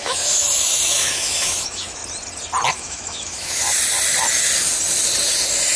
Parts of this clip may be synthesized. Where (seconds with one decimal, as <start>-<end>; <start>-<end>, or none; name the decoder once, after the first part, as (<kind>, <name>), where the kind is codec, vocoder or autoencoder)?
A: 0.0-2.0 (autoencoder, DAC-VAE); 2.7-3.6